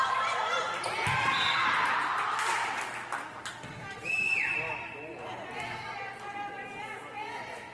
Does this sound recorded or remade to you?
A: recorded